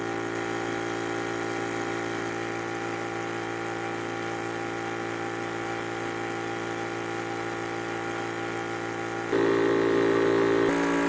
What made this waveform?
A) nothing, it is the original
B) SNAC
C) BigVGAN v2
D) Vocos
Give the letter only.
A